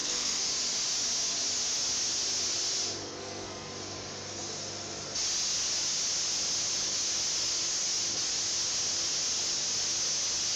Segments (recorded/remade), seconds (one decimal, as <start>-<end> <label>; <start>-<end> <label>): 0.0-0.5 remade; 0.5-3.0 recorded; 3.0-3.7 remade; 3.7-10.6 recorded